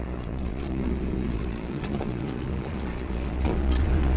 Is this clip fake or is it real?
fake